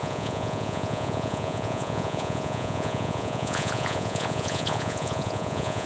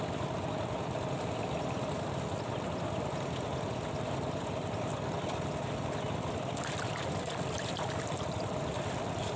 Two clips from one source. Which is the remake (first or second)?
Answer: first